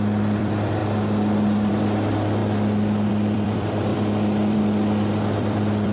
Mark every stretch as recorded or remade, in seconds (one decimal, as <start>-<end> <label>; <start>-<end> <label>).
0.0-0.8 remade; 0.8-1.7 recorded; 1.7-2.4 remade; 2.4-3.1 recorded; 3.1-5.9 remade